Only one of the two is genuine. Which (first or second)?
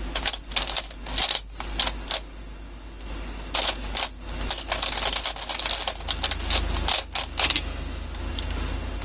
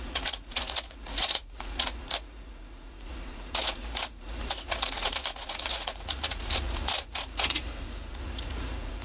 first